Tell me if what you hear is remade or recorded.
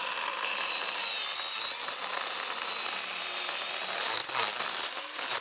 recorded